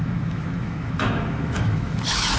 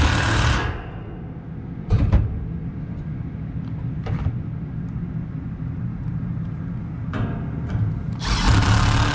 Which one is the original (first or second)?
second